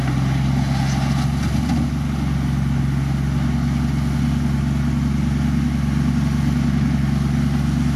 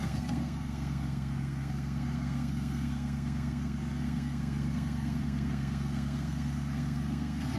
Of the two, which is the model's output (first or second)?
second